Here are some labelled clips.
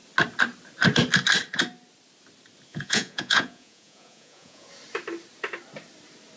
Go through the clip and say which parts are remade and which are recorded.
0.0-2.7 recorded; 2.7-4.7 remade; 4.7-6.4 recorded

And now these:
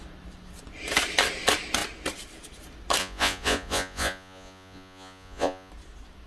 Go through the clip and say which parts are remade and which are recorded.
0.0-3.0 recorded; 3.0-5.7 remade; 5.7-6.3 recorded

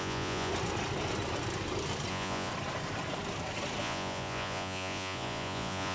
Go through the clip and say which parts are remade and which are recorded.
0.0-0.5 remade; 0.5-2.1 recorded; 2.1-2.5 remade; 2.5-3.8 recorded; 3.8-5.9 remade

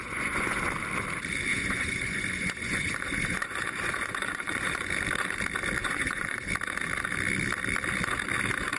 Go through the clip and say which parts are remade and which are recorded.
0.0-0.6 remade; 0.6-1.5 recorded; 1.5-4.9 remade; 4.9-5.8 recorded; 5.8-6.5 remade; 6.5-8.8 recorded

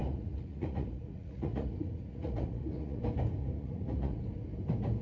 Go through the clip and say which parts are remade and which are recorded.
0.0-3.0 remade; 3.0-3.4 recorded; 3.4-4.2 remade; 4.2-5.0 recorded